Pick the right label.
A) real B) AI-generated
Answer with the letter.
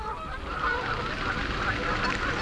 A